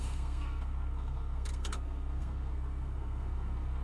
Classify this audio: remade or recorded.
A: remade